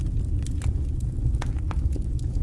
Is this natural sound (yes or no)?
yes